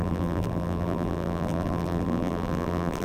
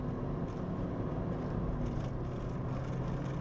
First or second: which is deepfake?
first